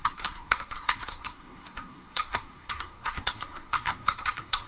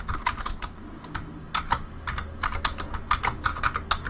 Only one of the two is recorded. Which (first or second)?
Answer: second